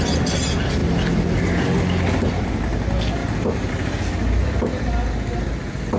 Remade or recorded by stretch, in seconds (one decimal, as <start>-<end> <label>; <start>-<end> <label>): 0.0-6.0 recorded